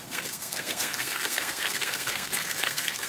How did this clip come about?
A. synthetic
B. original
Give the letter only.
A